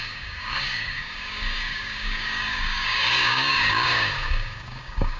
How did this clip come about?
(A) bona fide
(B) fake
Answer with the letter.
B